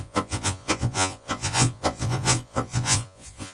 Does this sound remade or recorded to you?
remade